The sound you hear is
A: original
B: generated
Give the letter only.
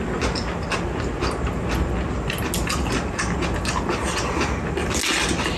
A